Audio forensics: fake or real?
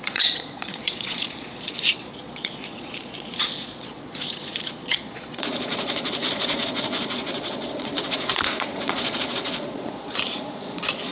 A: fake